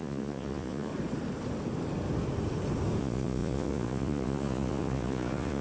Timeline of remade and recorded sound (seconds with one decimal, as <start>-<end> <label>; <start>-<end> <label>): 0.0-0.9 remade; 0.9-3.0 recorded; 3.0-5.6 remade